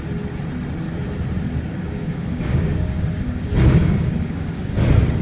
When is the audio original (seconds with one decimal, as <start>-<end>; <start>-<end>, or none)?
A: 0.0-1.7; 4.8-5.2